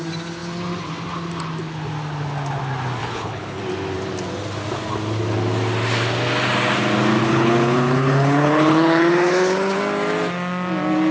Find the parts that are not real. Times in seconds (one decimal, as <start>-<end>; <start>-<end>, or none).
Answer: 3.0-3.6; 7.2-9.8